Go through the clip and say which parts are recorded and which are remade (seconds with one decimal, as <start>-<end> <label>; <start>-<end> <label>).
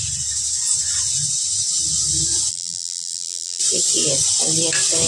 0.0-2.5 recorded; 2.5-3.6 remade; 3.6-5.1 recorded